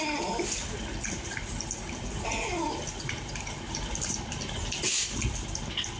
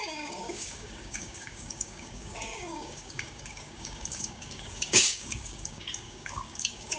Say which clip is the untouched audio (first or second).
first